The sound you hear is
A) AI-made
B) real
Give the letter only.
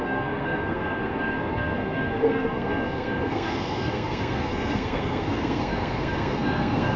A